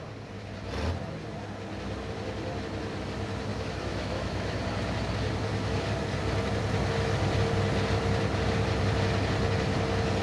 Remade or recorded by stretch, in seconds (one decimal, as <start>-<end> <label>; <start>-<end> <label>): 0.0-3.5 recorded; 3.5-4.6 remade; 4.6-10.2 recorded